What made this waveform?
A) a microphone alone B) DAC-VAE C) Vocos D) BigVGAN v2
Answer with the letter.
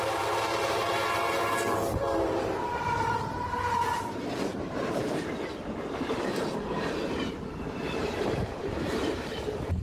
D